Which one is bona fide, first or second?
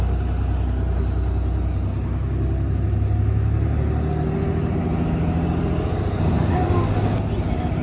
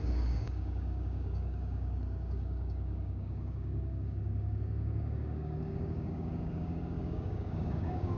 first